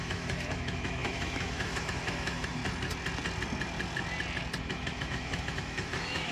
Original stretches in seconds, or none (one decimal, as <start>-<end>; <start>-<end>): 2.6-4.6